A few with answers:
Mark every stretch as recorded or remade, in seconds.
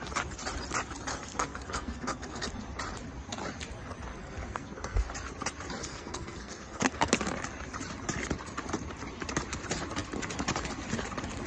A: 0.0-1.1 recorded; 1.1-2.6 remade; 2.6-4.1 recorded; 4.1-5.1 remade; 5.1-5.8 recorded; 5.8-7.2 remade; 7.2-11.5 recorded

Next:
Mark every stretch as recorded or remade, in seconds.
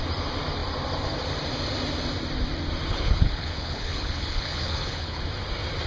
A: 0.0-2.9 recorded; 2.9-5.2 remade; 5.2-5.9 recorded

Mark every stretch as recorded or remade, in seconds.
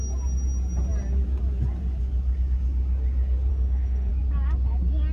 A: 0.0-3.5 recorded; 3.5-4.1 remade; 4.1-5.1 recorded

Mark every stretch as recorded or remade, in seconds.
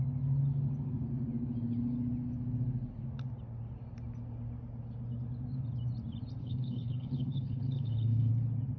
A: 0.0-6.4 recorded; 6.4-8.3 remade; 8.3-8.8 recorded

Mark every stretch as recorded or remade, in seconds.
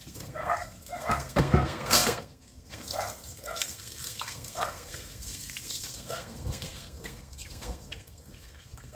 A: 0.0-8.9 remade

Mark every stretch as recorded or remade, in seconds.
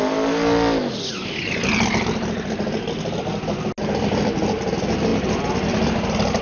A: 0.0-6.4 recorded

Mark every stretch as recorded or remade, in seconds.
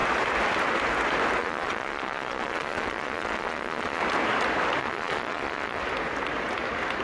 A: 0.0-1.4 recorded; 1.4-4.0 remade; 4.0-4.8 recorded; 4.8-5.8 remade; 5.8-7.0 recorded